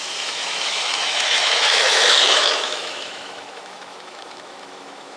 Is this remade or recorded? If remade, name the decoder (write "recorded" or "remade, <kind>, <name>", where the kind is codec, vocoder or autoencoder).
remade, autoencoder, DAC-VAE